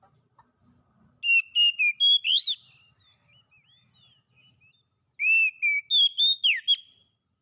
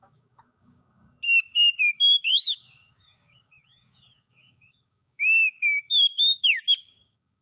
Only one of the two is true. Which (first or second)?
first